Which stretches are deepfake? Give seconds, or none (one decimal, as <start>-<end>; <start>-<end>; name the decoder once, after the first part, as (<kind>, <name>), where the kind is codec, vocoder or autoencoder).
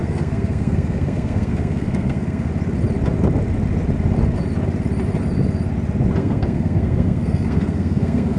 0.0-2.5 (codec, SNAC); 6.2-8.4